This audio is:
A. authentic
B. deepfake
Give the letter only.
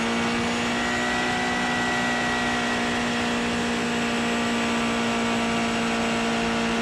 A